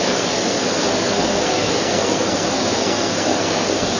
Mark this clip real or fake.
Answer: fake